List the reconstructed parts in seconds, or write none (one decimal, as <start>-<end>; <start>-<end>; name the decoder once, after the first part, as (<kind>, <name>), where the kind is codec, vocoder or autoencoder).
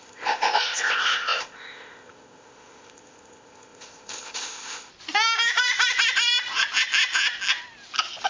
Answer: 0.0-4.9 (codec, ZipCodec)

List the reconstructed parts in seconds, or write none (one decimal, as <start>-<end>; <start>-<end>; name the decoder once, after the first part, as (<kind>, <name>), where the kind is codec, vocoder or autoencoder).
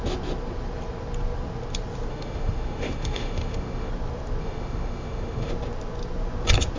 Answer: 2.1-3.9 (autoencoder, DAC-VAE); 4.4-5.5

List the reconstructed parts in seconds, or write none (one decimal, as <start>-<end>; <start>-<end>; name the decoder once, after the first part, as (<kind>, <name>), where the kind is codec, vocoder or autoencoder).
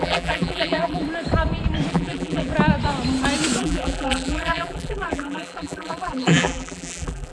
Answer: 0.0-1.0 (vocoder, BigVGAN v2); 1.9-2.5; 3.6-7.3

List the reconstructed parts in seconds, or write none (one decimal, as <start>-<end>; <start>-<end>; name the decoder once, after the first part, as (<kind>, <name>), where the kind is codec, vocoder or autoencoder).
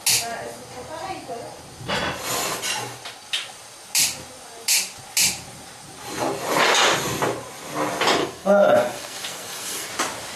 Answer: 8.2-9.9 (codec, SNAC)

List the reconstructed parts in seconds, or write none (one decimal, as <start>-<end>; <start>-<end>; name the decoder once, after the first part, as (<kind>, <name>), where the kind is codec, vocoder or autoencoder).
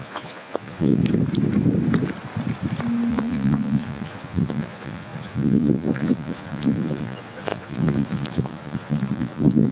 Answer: 0.0-1.0 (vocoder, Vocos); 3.1-9.7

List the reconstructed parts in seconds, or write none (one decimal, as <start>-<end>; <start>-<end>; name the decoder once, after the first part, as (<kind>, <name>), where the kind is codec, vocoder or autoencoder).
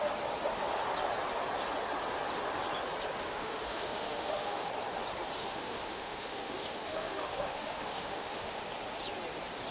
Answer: 3.3-4.7 (autoencoder, DAC-VAE); 5.4-8.6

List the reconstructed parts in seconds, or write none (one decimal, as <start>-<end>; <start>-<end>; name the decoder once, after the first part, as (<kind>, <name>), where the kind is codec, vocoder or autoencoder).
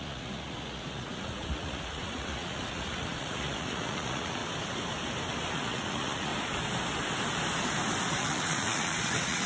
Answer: 0.0-4.4 (vocoder, Vocos); 5.5-6.3; 8.1-9.5